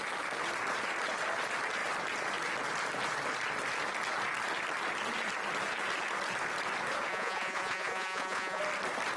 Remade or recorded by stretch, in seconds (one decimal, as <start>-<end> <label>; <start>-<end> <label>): 0.0-7.1 recorded; 7.1-8.6 remade; 8.6-9.2 recorded